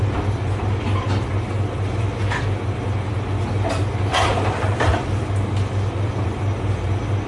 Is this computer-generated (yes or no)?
yes